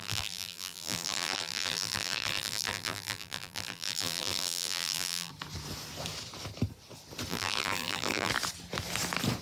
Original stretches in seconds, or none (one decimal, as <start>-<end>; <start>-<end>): 5.3-7.3; 8.3-9.4